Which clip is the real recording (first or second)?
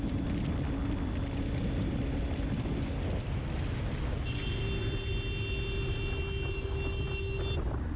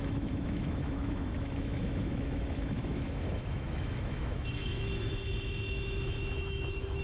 first